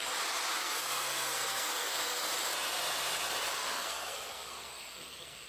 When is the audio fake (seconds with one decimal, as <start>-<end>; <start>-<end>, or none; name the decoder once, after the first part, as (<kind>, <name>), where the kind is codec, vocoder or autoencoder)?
0.5-2.3 (codec, SNAC); 3.5-5.5